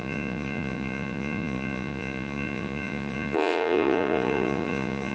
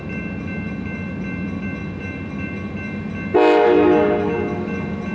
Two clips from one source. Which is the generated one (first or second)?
first